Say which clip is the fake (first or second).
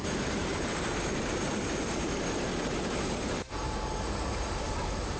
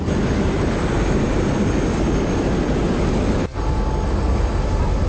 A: first